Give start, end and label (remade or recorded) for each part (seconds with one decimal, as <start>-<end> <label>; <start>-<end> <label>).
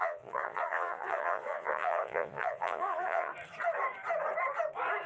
0.0-3.3 remade; 3.3-5.1 recorded